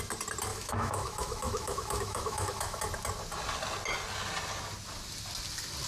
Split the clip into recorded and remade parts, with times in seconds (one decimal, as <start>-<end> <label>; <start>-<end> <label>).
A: 0.0-0.5 recorded; 0.5-2.8 remade; 2.8-5.9 recorded